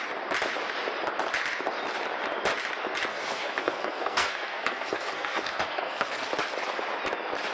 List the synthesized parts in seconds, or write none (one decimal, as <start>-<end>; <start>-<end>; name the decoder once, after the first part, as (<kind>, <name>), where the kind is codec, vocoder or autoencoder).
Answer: 3.1-6.3 (codec, SNAC)